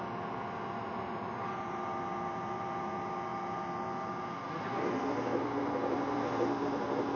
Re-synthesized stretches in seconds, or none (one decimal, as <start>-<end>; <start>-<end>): none